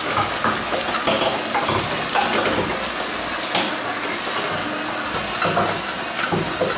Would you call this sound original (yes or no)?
yes